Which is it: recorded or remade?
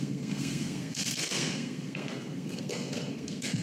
remade